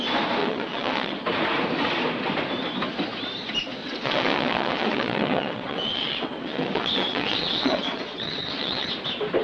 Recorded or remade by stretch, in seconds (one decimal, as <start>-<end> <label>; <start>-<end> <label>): 0.0-0.4 recorded; 0.4-1.2 remade; 1.2-3.8 recorded; 3.8-8.9 remade; 8.9-9.4 recorded